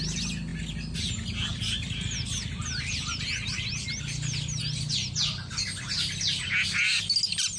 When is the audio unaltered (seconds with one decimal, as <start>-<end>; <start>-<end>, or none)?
0.0-7.6